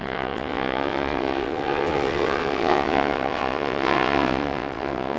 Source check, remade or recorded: remade